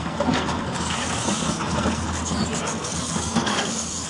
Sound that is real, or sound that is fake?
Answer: fake